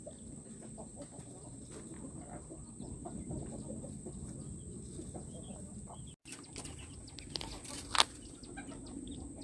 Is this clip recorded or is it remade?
recorded